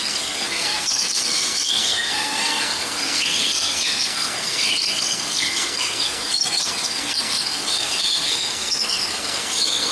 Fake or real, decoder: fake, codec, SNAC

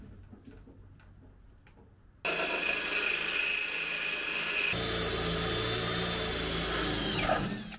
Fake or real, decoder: real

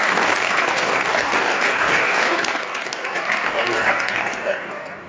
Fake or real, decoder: fake, codec, DAC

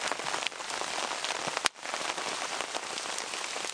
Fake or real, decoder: real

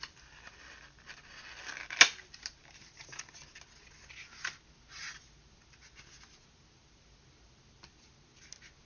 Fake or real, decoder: real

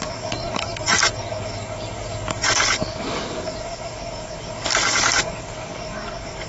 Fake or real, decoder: fake, codec, DAC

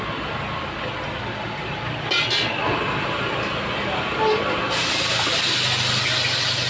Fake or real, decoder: real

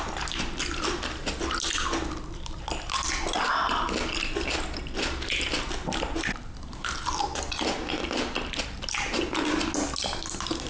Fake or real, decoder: real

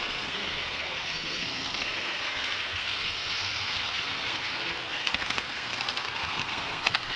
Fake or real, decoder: fake, codec, SNAC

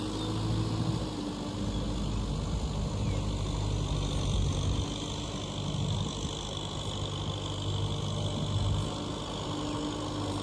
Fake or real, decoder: real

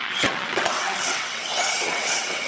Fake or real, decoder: fake, vocoder, WaveNeXt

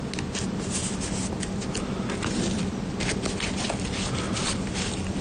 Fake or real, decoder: real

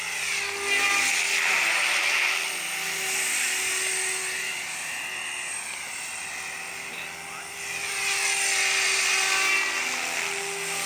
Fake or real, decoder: real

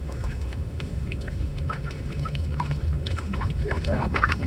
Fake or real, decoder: fake, autoencoder, DAC-VAE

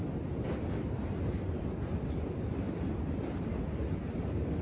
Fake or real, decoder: real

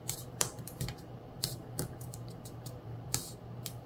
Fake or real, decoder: fake, vocoder, BigVGAN v2